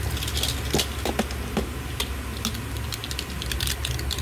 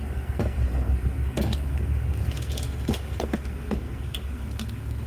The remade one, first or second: second